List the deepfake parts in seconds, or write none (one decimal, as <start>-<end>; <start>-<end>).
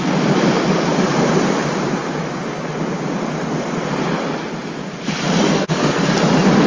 5.5-6.0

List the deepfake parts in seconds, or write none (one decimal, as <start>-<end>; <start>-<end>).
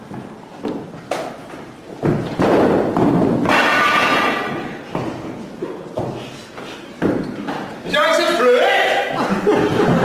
1.4-2.7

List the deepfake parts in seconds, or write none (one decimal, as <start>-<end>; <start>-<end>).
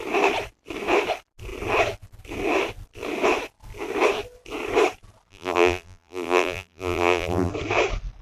5.3-7.5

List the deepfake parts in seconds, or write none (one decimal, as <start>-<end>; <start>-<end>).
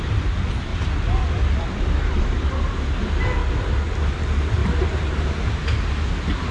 0.7-1.8; 3.4-4.0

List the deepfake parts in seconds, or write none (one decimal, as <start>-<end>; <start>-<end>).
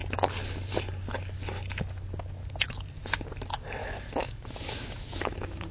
3.8-5.7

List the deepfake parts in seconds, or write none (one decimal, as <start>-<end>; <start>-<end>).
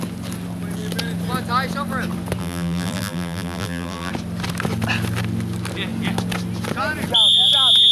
2.4-4.1